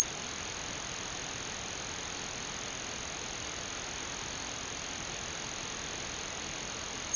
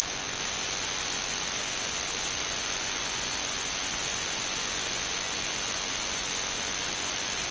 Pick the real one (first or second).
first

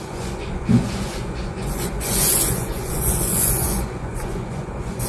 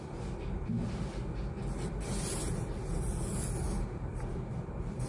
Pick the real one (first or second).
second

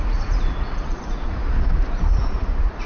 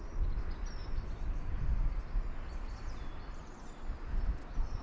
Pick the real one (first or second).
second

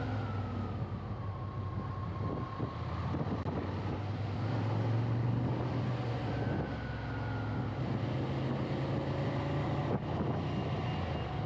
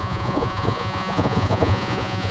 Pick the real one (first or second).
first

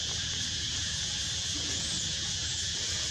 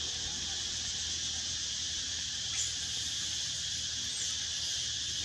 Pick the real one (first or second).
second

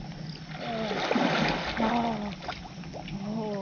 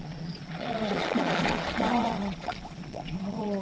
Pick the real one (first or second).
first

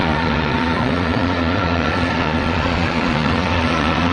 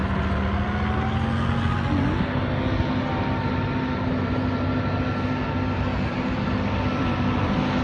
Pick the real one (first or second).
second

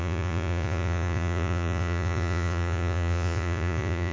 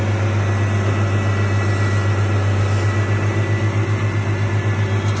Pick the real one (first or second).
second